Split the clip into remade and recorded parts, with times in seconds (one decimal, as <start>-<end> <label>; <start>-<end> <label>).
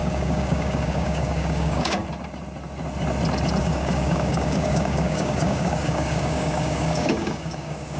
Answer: 0.0-2.0 remade; 2.0-3.6 recorded; 3.6-8.0 remade